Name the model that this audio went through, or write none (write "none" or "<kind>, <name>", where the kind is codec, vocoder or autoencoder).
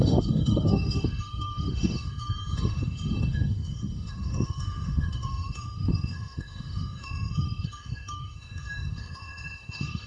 autoencoder, DAC-VAE